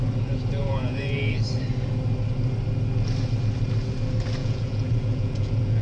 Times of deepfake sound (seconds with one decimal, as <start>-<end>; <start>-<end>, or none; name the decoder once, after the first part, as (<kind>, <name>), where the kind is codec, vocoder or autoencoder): 0.6-1.3 (vocoder, Vocos); 4.4-5.8